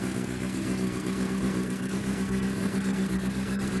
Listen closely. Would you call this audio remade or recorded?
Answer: remade